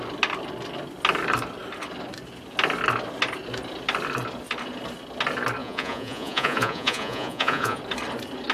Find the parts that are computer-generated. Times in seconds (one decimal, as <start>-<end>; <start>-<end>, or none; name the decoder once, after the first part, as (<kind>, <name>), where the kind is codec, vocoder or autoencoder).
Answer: 5.6-7.8 (vocoder, Vocos)